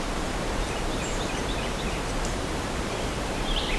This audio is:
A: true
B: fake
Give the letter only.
B